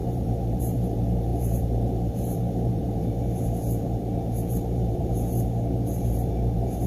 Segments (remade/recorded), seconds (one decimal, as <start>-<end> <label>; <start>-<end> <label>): 0.0-6.9 remade